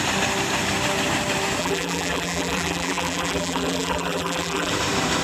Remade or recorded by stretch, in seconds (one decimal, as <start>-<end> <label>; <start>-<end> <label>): 0.0-1.6 recorded; 1.6-4.7 remade; 4.7-5.2 recorded